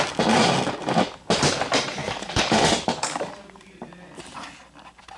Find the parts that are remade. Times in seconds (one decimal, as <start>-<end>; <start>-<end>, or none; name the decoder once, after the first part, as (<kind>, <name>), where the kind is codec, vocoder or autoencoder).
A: 2.0-3.3 (codec, DAC)